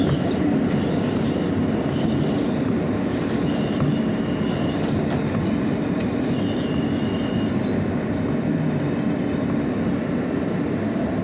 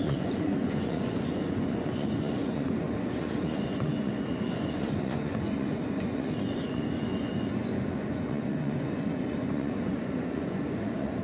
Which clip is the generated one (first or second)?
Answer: second